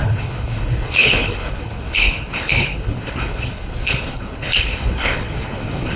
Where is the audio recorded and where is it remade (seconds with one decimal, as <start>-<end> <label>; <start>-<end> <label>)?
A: 0.0-6.0 remade